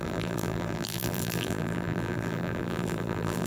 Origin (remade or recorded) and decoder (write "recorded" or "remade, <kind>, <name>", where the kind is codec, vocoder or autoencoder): remade, vocoder, BigVGAN v2